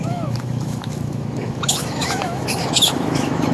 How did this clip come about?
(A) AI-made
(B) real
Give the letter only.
A